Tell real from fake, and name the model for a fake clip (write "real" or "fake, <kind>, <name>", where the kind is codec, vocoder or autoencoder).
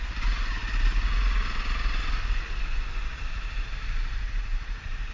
real